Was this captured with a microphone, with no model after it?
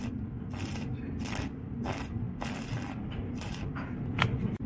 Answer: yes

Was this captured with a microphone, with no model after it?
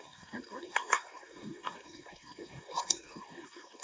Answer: no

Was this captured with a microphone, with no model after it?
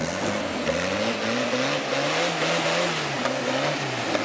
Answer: yes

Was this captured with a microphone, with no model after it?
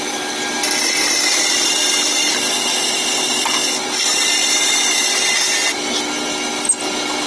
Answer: yes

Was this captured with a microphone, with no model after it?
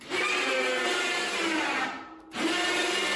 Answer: yes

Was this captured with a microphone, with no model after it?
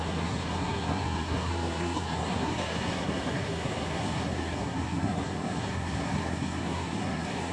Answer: no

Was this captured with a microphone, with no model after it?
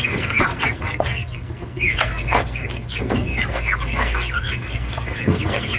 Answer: no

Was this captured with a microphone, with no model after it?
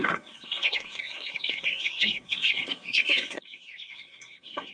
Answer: no